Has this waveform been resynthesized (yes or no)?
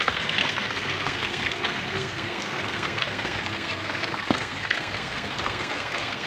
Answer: yes